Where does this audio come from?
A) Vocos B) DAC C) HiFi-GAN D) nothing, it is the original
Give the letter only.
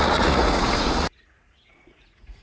A